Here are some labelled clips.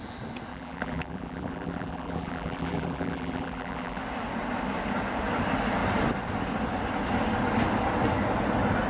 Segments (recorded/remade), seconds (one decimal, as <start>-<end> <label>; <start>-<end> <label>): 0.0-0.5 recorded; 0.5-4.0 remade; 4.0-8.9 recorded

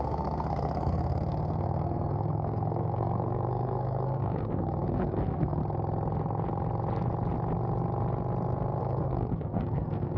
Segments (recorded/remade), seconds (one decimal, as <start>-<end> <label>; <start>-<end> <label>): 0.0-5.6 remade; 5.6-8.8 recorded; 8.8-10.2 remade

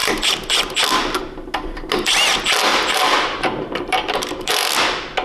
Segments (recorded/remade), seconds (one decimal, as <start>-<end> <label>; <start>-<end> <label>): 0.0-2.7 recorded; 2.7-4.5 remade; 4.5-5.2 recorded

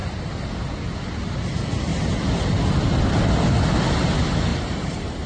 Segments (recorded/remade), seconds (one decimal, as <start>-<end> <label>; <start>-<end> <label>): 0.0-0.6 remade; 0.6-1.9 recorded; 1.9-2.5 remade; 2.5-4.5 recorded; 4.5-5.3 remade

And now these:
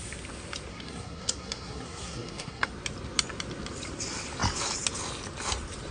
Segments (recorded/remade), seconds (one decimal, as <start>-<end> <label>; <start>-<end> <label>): 0.0-0.7 recorded; 0.7-2.7 remade; 2.7-5.9 recorded

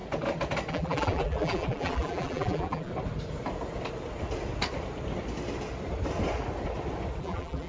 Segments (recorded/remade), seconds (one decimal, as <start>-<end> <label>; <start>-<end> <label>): 0.0-0.7 recorded; 0.7-2.9 remade; 2.9-7.2 recorded; 7.2-7.7 remade